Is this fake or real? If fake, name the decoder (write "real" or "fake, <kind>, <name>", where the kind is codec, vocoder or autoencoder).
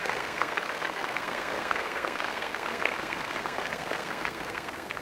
fake, codec, SNAC